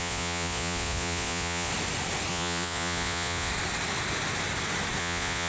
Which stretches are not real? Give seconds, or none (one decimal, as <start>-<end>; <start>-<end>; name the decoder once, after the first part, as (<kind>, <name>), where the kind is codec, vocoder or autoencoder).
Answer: 0.0-1.7 (vocoder, Vocos); 2.3-3.5; 5.0-5.5